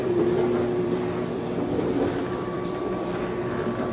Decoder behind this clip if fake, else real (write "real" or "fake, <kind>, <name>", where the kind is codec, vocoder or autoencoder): fake, vocoder, BigVGAN v2